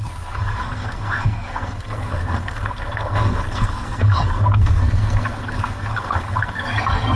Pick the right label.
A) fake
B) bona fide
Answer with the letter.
A